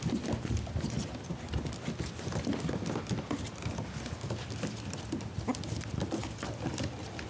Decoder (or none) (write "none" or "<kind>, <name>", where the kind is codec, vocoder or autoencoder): none